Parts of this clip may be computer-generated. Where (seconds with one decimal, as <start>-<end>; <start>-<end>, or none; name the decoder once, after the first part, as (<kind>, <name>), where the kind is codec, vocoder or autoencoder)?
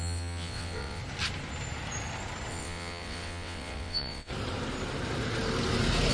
0.0-1.0 (vocoder, WaveNeXt); 2.5-4.3